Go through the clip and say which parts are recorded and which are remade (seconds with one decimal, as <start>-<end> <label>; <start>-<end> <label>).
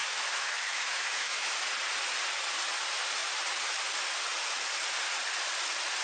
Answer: 0.0-1.5 remade; 1.5-6.0 recorded